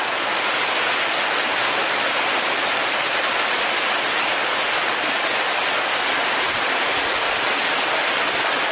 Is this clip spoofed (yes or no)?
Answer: no